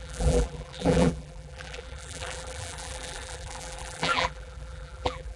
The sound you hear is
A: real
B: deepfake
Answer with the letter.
B